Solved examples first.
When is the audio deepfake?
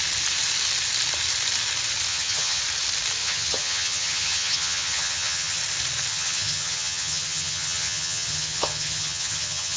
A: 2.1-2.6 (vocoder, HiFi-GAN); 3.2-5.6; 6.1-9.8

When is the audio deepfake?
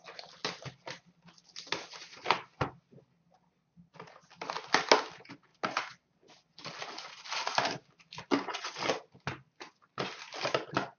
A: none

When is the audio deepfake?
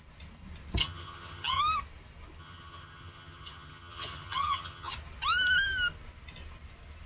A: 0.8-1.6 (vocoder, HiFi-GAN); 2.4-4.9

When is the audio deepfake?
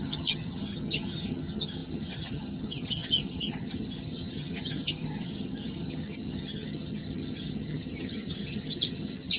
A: 0.0-9.4 (vocoder, HiFi-GAN)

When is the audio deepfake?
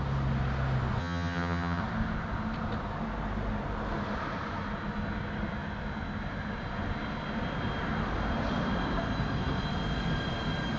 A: 1.0-1.8 (vocoder, HiFi-GAN)